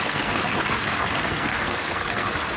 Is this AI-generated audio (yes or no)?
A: yes